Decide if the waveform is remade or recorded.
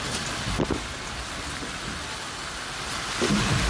recorded